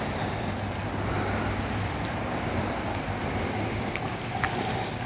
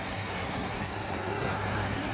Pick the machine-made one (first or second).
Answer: second